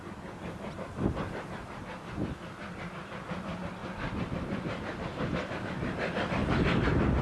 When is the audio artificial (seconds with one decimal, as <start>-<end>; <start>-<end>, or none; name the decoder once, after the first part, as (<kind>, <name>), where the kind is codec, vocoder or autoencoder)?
0.0-2.2 (vocoder, BigVGAN v2); 3.0-3.8; 5.5-6.4